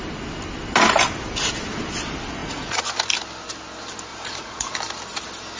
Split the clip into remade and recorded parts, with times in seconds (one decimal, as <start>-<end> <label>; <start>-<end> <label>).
0.0-2.4 recorded; 2.4-2.9 remade; 2.9-4.1 recorded; 4.1-4.7 remade; 4.7-5.6 recorded